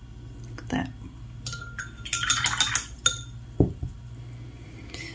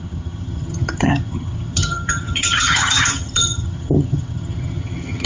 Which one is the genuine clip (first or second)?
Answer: first